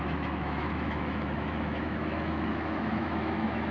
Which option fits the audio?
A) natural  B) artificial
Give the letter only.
B